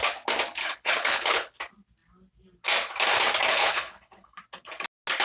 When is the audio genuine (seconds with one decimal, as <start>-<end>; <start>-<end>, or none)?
0.0-0.6; 1.6-3.5; 4.4-5.2